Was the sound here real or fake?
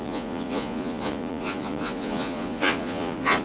fake